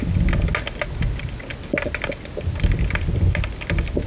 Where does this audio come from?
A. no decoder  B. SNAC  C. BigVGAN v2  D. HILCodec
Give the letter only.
A